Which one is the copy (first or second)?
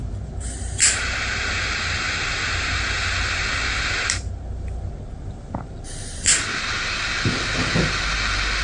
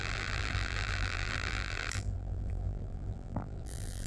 second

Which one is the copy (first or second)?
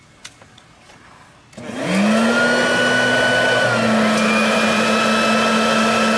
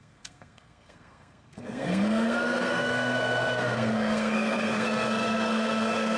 second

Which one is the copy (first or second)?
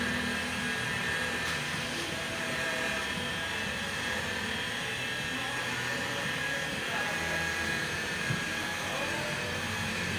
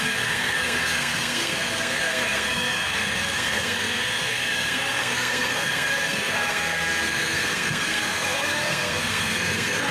second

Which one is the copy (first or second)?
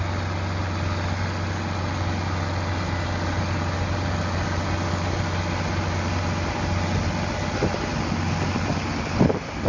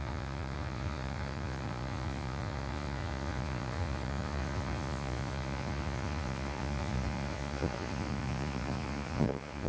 second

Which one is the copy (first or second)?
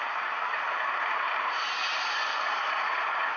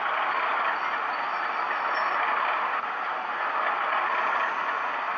first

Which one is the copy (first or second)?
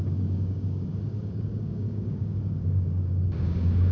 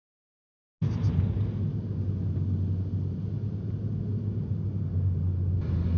first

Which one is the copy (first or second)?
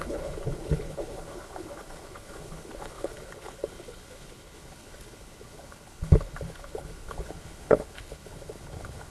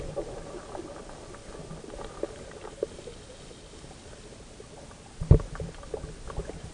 first